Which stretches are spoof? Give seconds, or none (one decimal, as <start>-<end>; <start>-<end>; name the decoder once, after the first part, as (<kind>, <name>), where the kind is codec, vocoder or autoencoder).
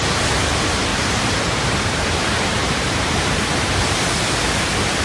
0.9-3.7 (vocoder, BigVGAN v2)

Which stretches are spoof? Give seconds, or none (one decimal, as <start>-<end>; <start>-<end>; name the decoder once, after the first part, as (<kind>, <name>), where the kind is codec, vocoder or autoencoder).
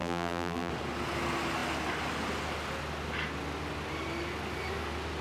0.0-0.7 (vocoder, BigVGAN v2)